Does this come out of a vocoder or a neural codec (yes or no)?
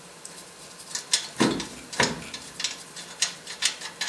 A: no